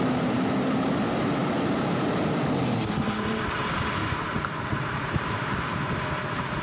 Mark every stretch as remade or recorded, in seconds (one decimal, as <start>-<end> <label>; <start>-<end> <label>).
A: 0.0-6.6 remade